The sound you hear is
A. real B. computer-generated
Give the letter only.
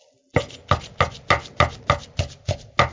A